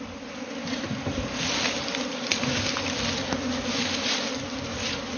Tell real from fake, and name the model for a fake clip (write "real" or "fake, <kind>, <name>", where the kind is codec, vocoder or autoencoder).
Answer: real